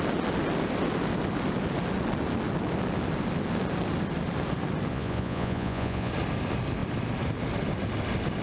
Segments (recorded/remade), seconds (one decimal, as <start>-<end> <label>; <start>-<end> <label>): 0.0-4.9 recorded; 4.9-6.1 remade; 6.1-8.4 recorded